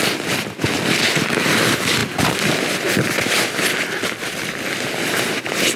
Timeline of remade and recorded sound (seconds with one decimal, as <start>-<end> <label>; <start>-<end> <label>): 0.0-5.8 recorded